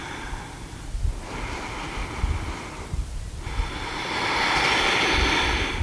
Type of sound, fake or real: real